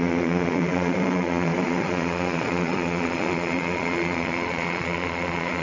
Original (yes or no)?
no